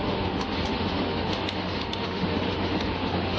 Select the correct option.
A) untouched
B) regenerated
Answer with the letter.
B